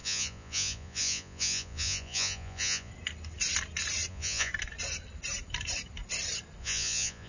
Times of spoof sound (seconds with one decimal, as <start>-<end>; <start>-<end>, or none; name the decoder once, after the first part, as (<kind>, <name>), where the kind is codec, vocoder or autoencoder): 0.0-2.9 (vocoder, Vocos); 4.1-4.5; 6.6-7.3